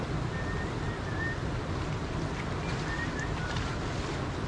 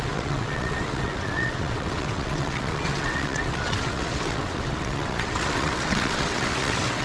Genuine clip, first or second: first